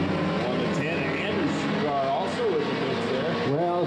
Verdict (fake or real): real